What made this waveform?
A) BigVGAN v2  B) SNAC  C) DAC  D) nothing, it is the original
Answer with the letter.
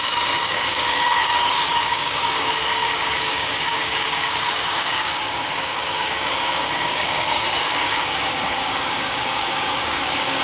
C